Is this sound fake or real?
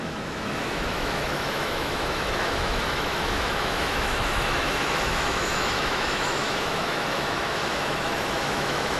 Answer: fake